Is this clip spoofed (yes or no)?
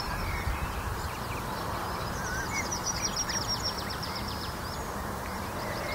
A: yes